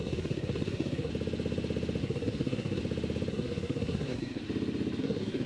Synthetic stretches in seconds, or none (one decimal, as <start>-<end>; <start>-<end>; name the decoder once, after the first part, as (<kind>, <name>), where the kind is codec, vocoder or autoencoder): 0.0-1.1 (codec, SNAC); 2.0-2.8; 3.3-4.4; 5.0-5.5